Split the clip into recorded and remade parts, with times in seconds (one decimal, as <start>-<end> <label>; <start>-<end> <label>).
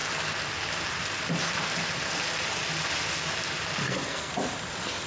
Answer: 0.0-3.8 recorded; 3.8-4.3 remade; 4.3-5.1 recorded